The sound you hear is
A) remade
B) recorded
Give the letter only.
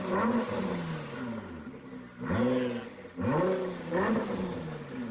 B